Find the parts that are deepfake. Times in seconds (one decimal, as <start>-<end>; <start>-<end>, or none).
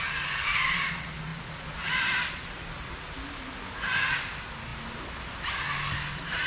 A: none